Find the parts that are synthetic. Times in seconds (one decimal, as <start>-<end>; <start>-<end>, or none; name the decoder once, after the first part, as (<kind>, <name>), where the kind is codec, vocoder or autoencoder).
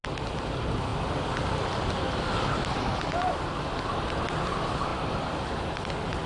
none